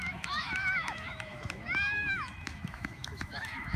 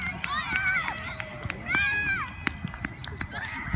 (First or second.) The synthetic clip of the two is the first